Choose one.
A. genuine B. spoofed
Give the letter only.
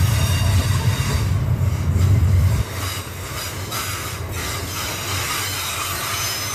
A